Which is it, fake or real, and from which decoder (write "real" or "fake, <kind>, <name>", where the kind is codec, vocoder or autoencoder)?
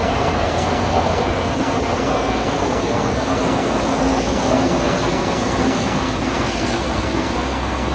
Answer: fake, codec, SNAC